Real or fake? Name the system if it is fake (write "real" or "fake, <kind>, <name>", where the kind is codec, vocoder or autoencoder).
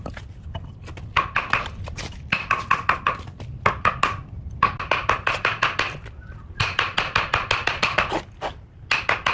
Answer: real